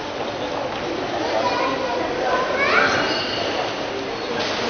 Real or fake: real